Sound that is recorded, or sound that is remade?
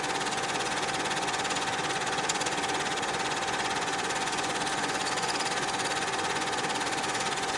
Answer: remade